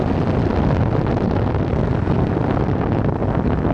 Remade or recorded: recorded